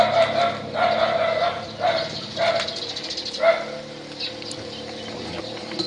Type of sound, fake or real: real